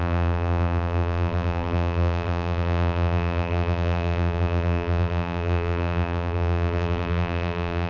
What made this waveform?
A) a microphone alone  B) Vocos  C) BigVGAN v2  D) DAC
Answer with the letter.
C